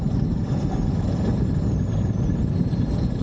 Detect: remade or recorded remade